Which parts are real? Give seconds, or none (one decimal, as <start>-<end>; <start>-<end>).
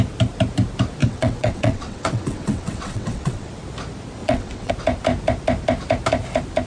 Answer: 0.0-1.0; 3.5-4.2; 4.7-6.7